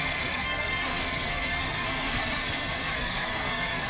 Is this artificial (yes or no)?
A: yes